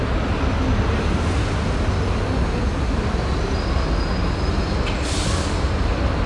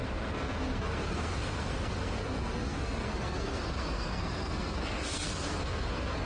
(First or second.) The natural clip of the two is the first